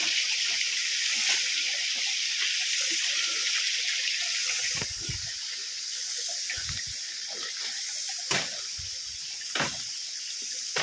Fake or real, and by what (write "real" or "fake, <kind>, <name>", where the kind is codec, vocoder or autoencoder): real